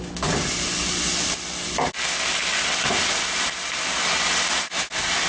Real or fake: real